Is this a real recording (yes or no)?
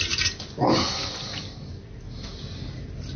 yes